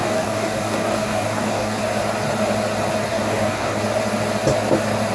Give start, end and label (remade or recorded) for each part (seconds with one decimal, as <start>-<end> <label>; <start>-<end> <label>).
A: 0.0-1.8 remade; 1.8-3.1 recorded; 3.1-3.8 remade; 3.8-5.1 recorded